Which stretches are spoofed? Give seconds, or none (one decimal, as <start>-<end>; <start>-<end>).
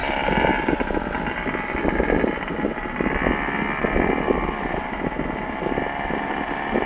1.8-2.7